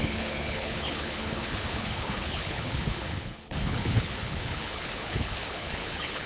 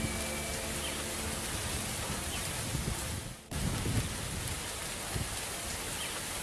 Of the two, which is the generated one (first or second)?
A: first